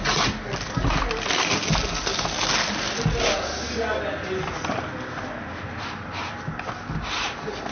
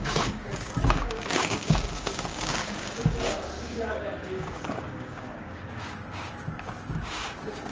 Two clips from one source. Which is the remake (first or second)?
second